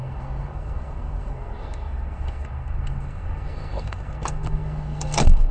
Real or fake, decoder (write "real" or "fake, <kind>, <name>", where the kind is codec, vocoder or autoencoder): fake, codec, SNAC